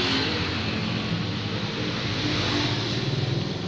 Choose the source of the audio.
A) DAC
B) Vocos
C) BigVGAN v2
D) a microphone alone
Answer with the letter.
D